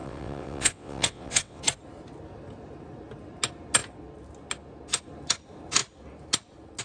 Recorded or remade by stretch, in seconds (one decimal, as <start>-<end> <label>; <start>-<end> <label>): 0.0-1.6 remade; 1.6-6.8 recorded